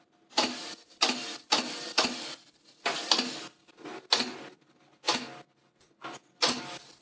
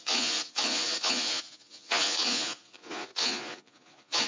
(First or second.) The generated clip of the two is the second